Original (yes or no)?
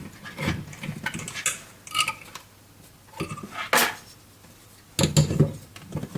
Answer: yes